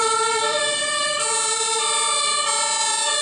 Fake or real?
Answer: fake